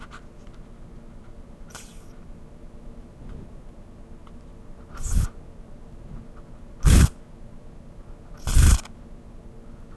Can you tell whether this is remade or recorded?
recorded